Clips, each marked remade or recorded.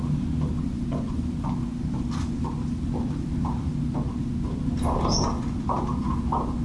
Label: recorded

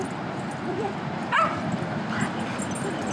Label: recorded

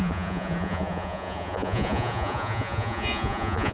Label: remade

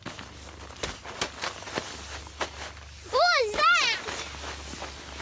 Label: recorded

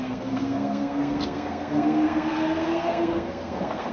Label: remade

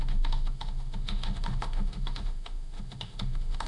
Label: remade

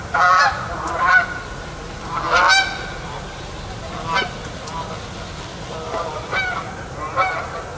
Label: recorded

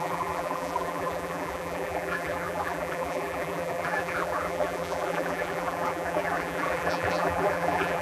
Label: remade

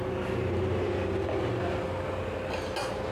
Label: recorded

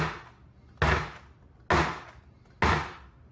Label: recorded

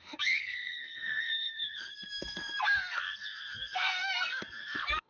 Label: remade